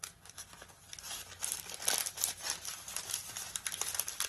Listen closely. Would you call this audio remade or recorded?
recorded